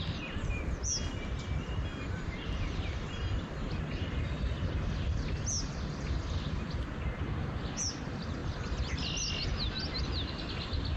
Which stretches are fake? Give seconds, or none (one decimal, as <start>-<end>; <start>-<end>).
none